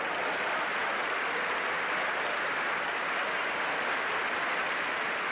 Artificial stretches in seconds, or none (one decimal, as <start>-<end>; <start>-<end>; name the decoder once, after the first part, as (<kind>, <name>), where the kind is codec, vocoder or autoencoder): none